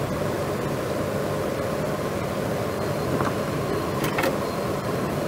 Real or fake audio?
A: real